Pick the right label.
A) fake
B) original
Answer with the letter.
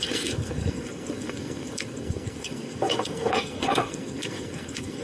A